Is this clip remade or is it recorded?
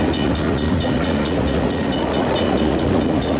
remade